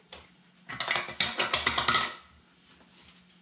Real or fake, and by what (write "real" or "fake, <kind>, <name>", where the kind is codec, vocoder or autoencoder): real